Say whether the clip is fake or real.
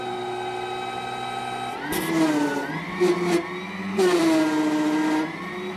real